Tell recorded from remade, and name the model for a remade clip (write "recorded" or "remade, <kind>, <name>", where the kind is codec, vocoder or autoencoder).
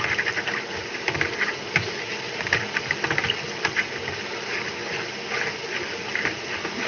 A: recorded